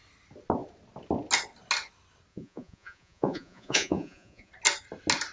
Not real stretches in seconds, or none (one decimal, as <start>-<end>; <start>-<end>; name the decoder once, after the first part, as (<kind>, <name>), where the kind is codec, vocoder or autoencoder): 2.3-4.5 (vocoder, Vocos)